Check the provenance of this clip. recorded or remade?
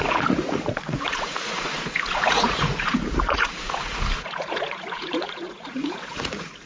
remade